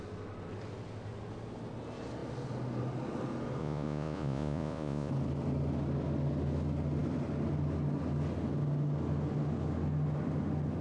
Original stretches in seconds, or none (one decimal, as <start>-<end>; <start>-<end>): 0.0-3.6; 5.1-10.8